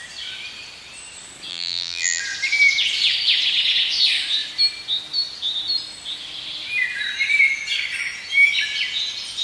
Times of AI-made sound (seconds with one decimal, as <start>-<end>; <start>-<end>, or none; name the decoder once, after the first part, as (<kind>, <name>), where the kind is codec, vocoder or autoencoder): 1.5-2.2 (vocoder, BigVGAN v2)